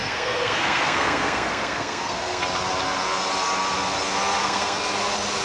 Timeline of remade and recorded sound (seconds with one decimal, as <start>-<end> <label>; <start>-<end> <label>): 0.0-2.4 remade; 2.4-4.4 recorded; 4.4-4.9 remade; 4.9-5.4 recorded